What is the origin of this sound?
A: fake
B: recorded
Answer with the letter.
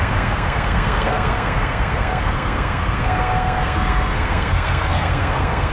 A